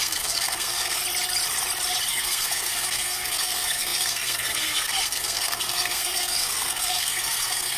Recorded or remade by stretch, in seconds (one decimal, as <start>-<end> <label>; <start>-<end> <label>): 0.0-1.0 remade; 1.0-2.1 recorded; 2.1-7.8 remade